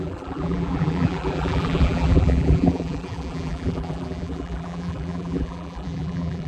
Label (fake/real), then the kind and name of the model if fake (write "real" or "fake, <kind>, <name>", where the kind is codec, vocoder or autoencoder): fake, vocoder, BigVGAN v2